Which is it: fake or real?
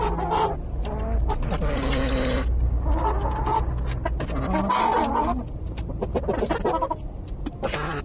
real